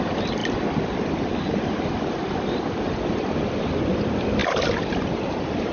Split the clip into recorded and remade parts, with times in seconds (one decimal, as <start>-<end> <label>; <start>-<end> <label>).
0.0-5.7 recorded